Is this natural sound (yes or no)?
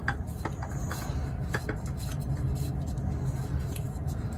yes